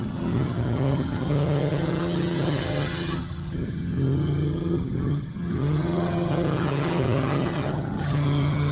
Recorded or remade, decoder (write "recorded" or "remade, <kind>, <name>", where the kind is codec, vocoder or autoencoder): remade, vocoder, HiFi-GAN